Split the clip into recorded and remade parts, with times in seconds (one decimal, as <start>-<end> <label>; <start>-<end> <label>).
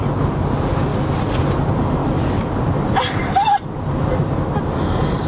0.0-5.3 recorded